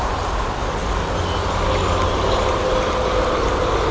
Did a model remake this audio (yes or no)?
no